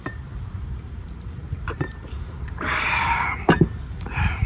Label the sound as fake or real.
fake